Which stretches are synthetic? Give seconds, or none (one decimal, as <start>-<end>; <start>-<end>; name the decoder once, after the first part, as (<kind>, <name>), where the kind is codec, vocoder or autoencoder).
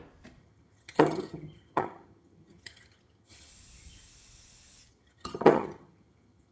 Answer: 0.4-3.5 (vocoder, HiFi-GAN); 4.9-6.5